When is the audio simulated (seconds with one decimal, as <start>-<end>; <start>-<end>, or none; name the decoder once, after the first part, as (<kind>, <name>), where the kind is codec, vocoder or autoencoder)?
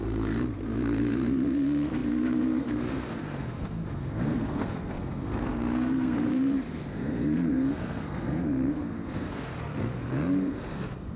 0.0-11.2 (codec, SNAC)